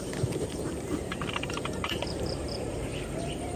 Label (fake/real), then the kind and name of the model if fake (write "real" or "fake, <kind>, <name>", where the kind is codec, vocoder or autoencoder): fake, vocoder, BigVGAN v2